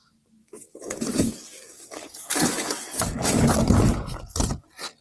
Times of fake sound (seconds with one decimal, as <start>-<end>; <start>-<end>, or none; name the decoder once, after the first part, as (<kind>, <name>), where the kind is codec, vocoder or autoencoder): 0.4-3.4 (codec, DAC)